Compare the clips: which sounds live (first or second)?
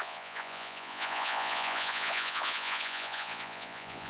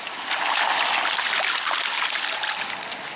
second